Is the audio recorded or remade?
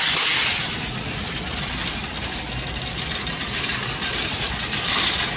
recorded